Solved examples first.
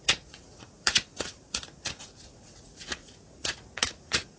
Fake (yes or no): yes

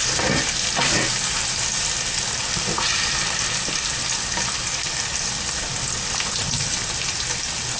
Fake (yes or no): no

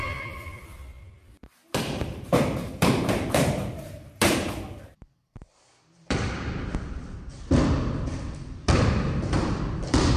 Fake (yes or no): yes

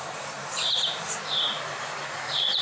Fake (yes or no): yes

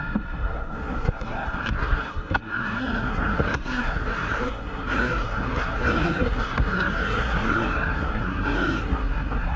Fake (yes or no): yes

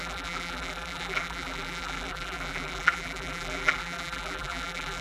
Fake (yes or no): yes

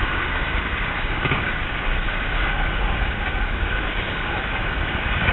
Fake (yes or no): yes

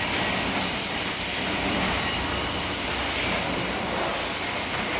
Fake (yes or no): yes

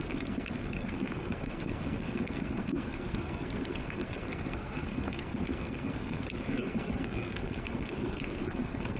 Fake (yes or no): yes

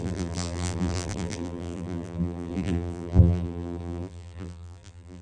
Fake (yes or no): yes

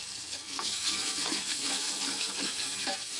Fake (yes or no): yes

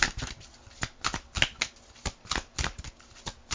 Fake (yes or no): no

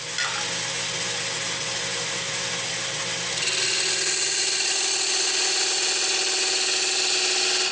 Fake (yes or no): no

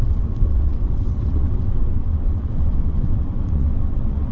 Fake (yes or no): yes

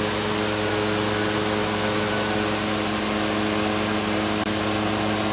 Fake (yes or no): no